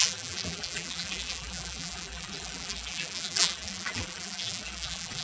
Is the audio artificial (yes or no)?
yes